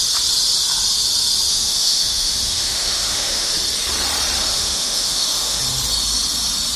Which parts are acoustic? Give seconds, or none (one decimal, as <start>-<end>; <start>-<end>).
0.0-1.5; 3.5-4.5; 5.6-6.8